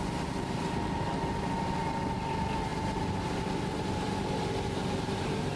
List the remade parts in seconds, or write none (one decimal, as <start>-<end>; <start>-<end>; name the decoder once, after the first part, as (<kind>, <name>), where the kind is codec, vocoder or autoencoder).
none